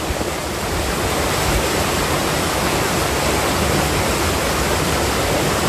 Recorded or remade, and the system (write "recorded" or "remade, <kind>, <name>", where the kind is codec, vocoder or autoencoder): recorded